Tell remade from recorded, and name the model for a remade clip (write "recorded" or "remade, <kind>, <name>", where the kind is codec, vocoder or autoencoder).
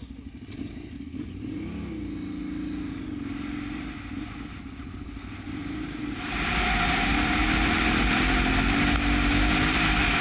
recorded